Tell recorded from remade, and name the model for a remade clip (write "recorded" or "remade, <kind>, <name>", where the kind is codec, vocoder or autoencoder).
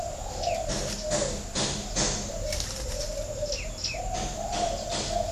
remade, vocoder, BigVGAN v2